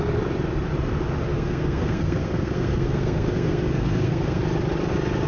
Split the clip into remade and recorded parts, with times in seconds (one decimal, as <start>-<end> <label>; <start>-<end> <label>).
0.0-1.3 recorded; 1.3-4.4 remade; 4.4-5.3 recorded